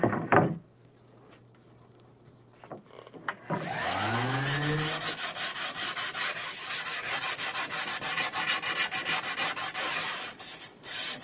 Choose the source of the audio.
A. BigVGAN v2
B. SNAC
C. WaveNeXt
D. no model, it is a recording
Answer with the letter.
D